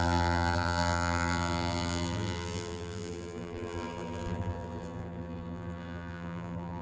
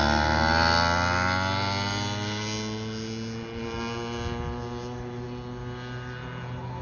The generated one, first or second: first